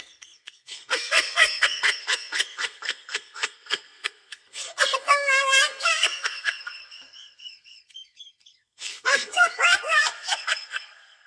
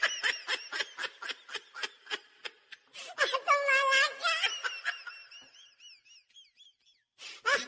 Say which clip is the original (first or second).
second